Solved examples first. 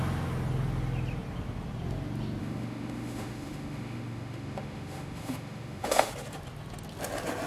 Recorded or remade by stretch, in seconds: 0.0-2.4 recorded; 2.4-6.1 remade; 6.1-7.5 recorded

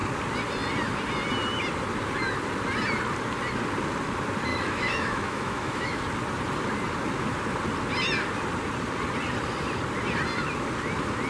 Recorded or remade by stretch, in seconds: 0.0-4.5 recorded; 4.5-6.0 remade; 6.0-11.3 recorded

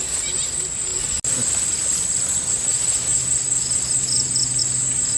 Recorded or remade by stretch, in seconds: 0.0-5.2 recorded

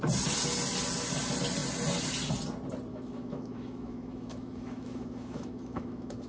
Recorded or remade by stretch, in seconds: 0.0-2.9 recorded; 2.9-6.3 remade

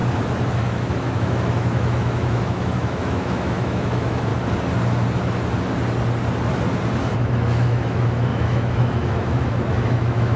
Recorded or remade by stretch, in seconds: 0.0-0.6 recorded; 0.6-4.3 remade; 4.3-7.1 recorded; 7.1-10.4 remade

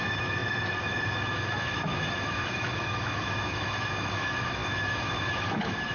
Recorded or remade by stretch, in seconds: 0.0-5.9 remade

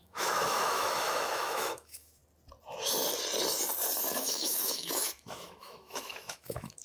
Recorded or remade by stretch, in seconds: 0.0-2.2 remade; 2.2-4.0 recorded; 4.0-6.8 remade

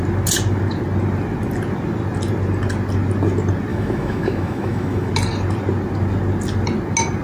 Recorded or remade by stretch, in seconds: 0.0-3.7 recorded; 3.7-5.1 remade; 5.1-7.2 recorded